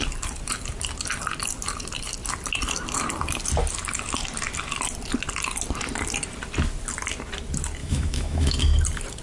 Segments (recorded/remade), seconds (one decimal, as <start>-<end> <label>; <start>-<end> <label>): 0.0-7.8 recorded; 7.8-8.5 remade; 8.5-9.2 recorded

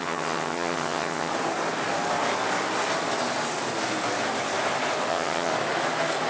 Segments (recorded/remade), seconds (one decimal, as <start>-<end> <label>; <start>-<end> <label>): 0.0-1.3 remade; 1.3-5.1 recorded; 5.1-5.5 remade; 5.5-6.3 recorded

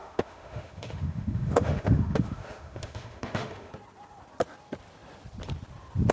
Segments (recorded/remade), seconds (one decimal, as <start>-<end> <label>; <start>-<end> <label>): 0.0-3.7 remade; 3.7-6.1 recorded